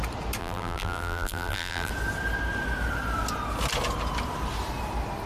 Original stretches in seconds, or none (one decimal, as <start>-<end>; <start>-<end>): 0.0-0.4; 1.9-5.3